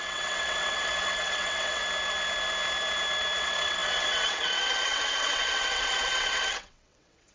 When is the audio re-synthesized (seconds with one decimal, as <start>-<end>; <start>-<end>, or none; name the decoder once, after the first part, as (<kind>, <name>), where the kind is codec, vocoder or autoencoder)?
0.0-1.8 (vocoder, WaveNeXt); 3.4-7.3